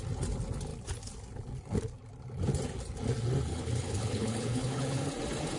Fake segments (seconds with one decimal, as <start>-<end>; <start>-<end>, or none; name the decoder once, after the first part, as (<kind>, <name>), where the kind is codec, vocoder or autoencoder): 3.5-5.1 (codec, HILCodec)